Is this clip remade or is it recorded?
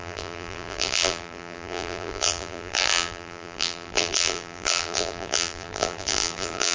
remade